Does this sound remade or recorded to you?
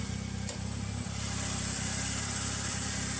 recorded